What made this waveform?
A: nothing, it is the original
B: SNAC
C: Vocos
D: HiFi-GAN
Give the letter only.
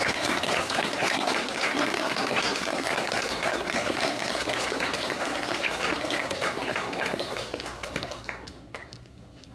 B